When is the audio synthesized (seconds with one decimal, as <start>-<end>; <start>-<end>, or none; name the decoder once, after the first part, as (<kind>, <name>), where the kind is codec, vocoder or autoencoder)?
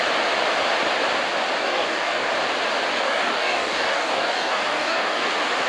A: 1.6-2.3 (codec, DAC); 2.9-5.3